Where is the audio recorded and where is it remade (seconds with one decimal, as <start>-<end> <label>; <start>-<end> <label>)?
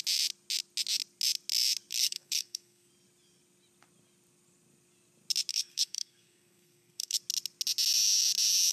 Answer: 0.0-1.9 recorded; 1.9-2.9 remade; 2.9-5.5 recorded; 5.5-7.2 remade; 7.2-8.7 recorded